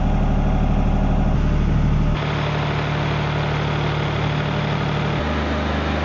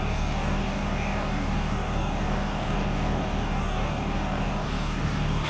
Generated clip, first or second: second